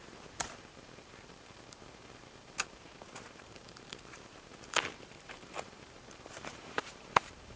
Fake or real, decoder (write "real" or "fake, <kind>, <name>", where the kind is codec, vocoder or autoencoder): fake, vocoder, BigVGAN v2